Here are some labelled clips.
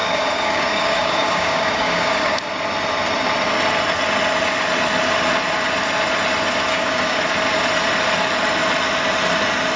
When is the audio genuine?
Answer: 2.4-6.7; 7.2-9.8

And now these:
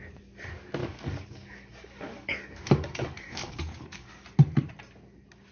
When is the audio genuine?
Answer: 0.0-0.8; 4.1-5.5